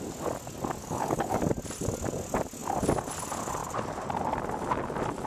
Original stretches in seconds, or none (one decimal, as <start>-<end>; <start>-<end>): 0.0-0.8; 1.4-5.3